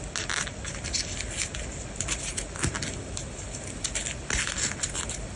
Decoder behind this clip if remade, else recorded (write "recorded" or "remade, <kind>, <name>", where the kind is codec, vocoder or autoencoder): recorded